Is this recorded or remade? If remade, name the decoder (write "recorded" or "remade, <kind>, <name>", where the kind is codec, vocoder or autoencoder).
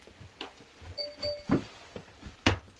recorded